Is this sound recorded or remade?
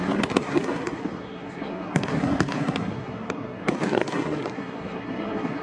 remade